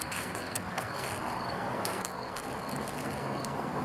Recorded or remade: remade